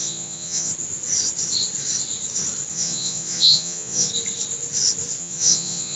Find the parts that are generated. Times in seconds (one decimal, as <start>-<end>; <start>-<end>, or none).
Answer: 0.0-0.7; 2.7-4.1; 5.2-6.0